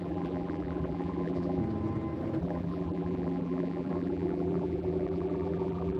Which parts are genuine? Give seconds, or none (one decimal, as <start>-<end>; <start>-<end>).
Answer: 1.6-2.4